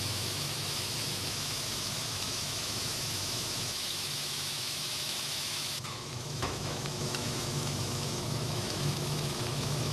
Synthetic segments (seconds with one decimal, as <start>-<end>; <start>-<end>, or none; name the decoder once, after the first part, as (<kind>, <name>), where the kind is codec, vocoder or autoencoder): 0.0-9.9 (autoencoder, DAC-VAE)